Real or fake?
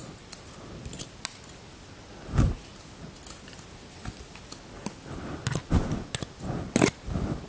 real